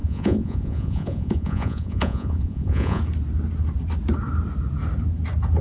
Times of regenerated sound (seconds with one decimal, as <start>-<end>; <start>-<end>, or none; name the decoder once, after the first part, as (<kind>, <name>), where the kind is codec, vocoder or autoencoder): 0.0-3.0 (vocoder, Vocos)